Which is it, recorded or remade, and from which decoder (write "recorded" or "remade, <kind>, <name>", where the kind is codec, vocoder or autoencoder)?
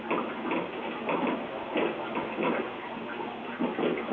recorded